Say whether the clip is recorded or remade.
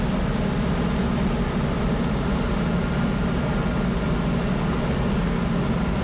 recorded